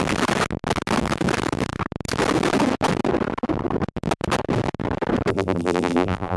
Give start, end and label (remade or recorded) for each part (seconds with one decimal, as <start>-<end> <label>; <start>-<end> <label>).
0.0-5.3 recorded; 5.3-6.4 remade